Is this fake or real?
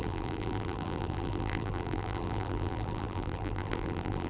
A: fake